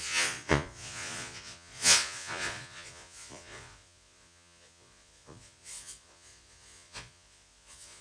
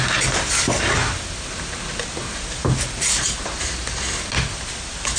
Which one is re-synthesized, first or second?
first